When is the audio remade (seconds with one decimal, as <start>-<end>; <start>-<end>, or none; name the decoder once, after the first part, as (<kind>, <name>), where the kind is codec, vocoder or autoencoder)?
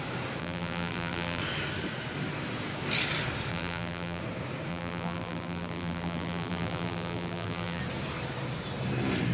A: 0.4-1.4 (vocoder, BigVGAN v2); 3.5-4.2; 4.7-7.8